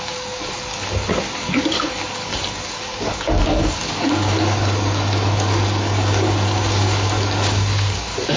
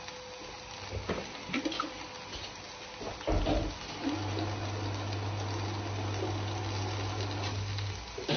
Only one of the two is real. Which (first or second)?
second